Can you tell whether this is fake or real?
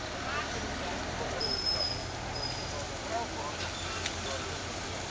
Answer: real